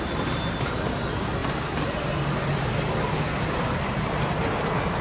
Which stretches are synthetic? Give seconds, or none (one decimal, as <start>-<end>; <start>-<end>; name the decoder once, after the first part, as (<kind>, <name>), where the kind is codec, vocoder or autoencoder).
0.0-5.0 (vocoder, BigVGAN v2)